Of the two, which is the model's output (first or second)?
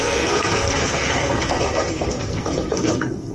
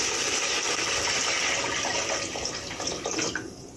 first